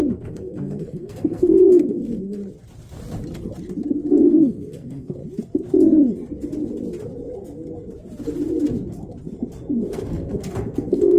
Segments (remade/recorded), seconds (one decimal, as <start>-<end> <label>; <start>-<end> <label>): 0.0-2.4 remade; 2.4-4.1 recorded; 4.1-5.2 remade; 5.2-9.9 recorded; 9.9-11.2 remade